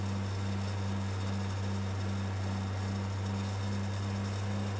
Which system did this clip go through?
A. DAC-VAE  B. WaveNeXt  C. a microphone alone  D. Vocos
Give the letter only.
C